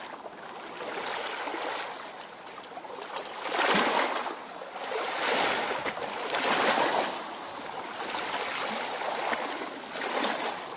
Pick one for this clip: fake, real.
real